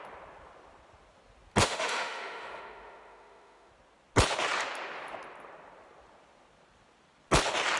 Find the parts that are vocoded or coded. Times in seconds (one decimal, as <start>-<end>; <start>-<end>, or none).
1.6-3.7